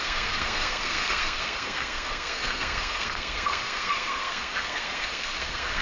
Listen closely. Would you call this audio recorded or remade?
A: remade